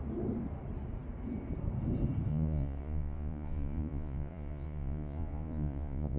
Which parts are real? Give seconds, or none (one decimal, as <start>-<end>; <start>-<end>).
0.0-2.3